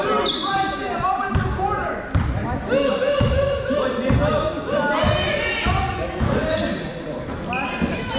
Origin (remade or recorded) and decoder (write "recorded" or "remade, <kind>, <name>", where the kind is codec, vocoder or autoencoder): recorded